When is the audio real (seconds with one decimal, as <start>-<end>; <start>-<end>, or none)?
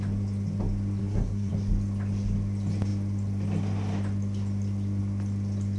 0.0-1.0; 1.5-5.8